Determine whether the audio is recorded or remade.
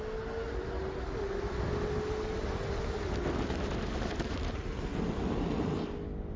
recorded